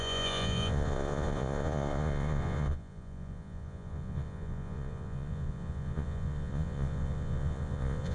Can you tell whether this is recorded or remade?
remade